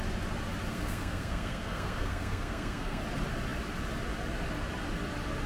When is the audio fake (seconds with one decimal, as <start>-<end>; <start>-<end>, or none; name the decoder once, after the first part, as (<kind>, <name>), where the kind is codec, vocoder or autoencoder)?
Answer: 0.7-3.0 (codec, SNAC)